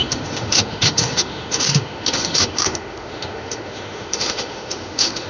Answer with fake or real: fake